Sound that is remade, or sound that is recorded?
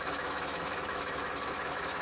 remade